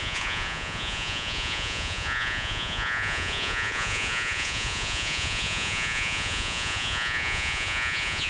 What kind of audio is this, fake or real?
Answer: fake